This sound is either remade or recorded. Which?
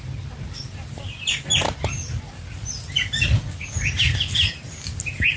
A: recorded